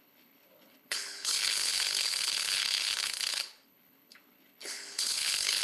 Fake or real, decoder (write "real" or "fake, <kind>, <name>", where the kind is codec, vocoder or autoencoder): fake, codec, HILCodec